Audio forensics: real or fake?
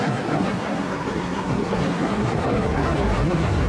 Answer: fake